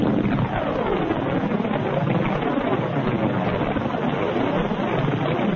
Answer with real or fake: real